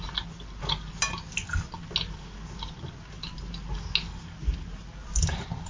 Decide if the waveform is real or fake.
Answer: real